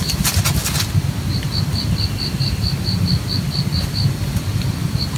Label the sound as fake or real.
real